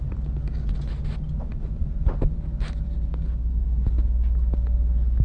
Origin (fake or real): real